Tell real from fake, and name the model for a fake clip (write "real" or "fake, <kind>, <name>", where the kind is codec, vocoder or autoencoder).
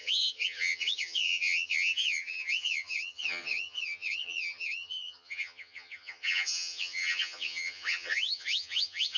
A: fake, vocoder, HiFi-GAN